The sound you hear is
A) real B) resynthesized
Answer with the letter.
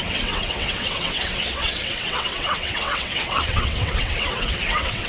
B